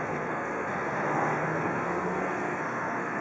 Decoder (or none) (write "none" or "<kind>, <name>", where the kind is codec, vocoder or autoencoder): codec, SNAC